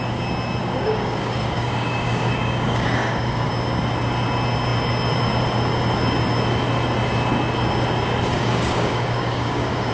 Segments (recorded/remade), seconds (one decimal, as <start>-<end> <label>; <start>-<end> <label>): 0.0-0.6 recorded; 0.6-3.5 remade; 3.5-8.3 recorded; 8.3-9.9 remade